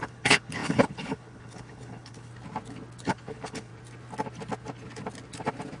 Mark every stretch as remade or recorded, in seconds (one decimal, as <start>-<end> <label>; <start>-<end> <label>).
0.0-2.3 remade; 2.3-3.0 recorded; 3.0-3.7 remade; 3.7-5.8 recorded